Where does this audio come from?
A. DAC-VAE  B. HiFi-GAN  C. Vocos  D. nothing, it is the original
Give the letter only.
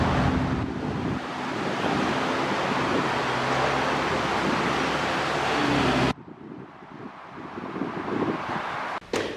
D